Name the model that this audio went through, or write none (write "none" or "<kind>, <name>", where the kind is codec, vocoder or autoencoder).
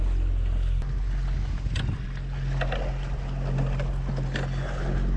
none